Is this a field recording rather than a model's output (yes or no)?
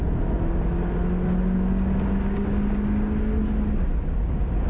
yes